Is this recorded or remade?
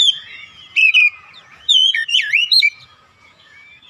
remade